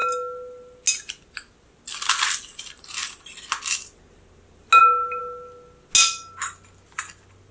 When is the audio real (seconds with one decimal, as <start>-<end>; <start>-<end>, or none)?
0.0-7.5